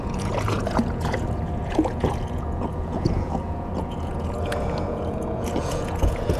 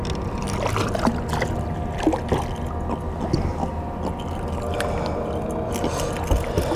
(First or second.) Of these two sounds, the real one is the second